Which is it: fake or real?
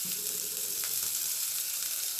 fake